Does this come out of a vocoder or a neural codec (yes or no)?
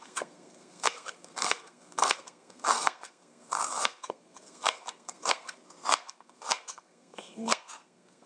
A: yes